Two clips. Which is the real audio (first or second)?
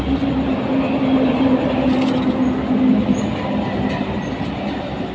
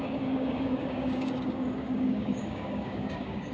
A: first